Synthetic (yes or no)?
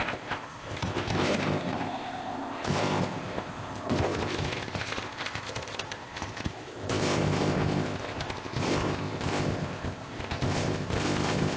yes